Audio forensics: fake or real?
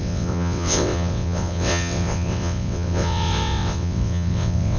fake